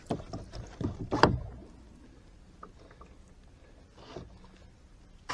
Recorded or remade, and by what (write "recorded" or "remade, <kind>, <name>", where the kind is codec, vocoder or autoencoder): recorded